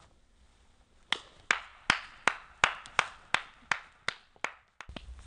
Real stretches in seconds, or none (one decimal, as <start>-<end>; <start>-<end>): 0.0-5.3